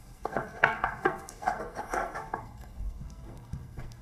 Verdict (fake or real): fake